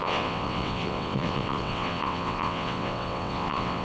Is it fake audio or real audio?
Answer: fake